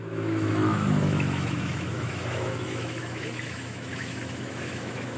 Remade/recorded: remade